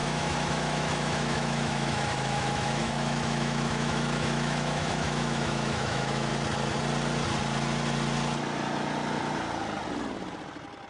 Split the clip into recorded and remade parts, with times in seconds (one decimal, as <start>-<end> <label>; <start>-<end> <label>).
0.0-6.3 remade; 6.3-10.9 recorded